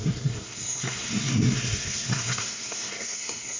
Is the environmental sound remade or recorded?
remade